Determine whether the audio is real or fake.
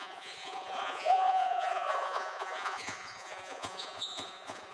fake